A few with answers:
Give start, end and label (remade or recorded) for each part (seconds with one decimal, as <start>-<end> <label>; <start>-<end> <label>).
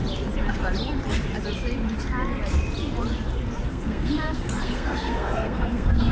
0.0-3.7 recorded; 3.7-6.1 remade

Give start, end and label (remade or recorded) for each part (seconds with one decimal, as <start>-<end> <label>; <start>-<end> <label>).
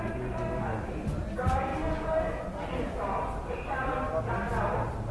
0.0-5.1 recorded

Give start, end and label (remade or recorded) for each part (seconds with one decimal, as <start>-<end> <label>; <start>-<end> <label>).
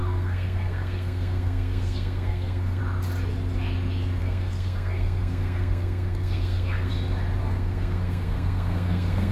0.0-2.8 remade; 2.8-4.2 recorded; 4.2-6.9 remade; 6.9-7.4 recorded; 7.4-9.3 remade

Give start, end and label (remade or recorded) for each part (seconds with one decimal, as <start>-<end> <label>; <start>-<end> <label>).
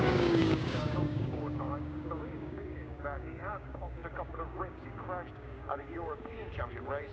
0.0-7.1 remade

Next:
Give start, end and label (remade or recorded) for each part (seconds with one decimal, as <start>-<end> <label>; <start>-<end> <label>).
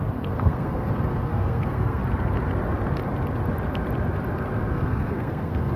0.0-2.0 remade; 2.0-4.7 recorded; 4.7-5.8 remade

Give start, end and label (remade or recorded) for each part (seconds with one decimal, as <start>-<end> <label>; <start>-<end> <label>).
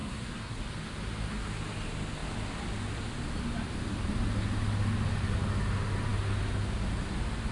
0.0-0.6 remade; 0.6-7.5 recorded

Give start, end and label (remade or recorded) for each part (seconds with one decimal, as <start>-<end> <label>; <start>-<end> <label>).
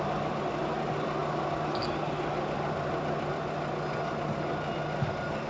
0.0-5.5 recorded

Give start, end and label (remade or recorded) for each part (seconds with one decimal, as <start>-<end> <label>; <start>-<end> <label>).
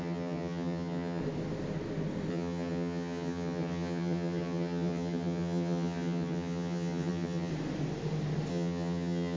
0.0-1.2 remade; 1.2-2.3 recorded; 2.3-7.5 remade; 7.5-8.5 recorded; 8.5-9.4 remade